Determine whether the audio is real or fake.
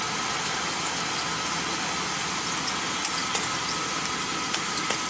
real